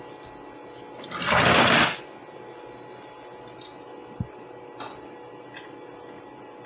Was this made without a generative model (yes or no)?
yes